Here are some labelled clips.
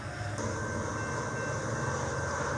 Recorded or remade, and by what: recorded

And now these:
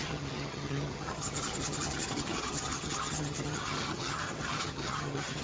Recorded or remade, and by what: remade, vocoder, HiFi-GAN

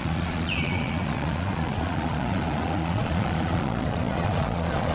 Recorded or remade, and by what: remade, vocoder, Vocos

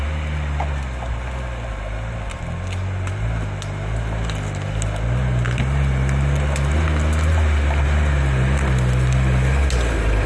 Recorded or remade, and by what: recorded